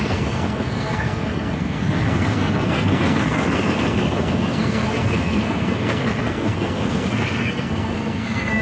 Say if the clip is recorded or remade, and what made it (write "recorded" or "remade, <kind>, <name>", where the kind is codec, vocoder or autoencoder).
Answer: remade, codec, SNAC